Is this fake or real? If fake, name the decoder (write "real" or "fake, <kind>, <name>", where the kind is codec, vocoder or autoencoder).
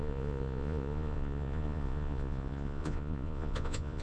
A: fake, vocoder, Vocos